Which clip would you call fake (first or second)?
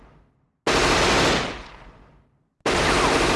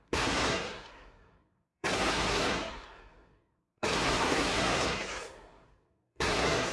second